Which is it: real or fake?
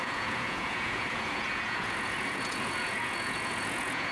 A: fake